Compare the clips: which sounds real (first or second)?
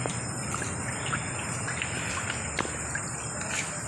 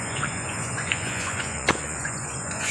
first